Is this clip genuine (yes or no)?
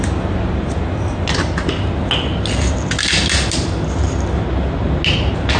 yes